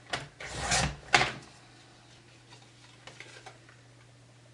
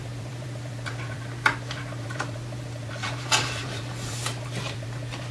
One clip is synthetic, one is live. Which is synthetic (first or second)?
second